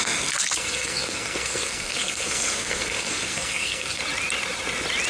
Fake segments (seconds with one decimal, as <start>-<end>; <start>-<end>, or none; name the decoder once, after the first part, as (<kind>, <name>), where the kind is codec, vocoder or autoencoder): 0.0-4.0 (codec, SNAC)